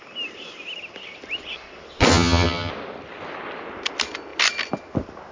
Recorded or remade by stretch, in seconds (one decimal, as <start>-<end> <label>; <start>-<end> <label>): 0.0-2.1 recorded; 2.1-2.7 remade; 2.7-5.3 recorded